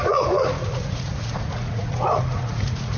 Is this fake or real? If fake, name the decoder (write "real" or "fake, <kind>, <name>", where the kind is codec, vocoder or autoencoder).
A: fake, vocoder, Vocos